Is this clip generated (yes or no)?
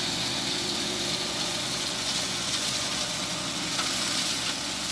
yes